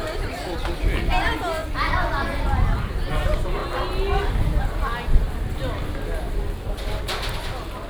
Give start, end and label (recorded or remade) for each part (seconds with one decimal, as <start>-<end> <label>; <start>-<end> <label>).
0.0-7.9 recorded